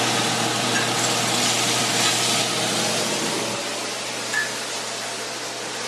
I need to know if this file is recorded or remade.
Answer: recorded